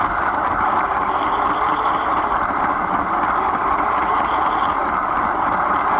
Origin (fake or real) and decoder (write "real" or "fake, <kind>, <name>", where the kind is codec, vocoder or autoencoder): real